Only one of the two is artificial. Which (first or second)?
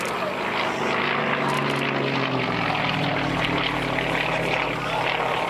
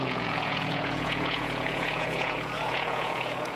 second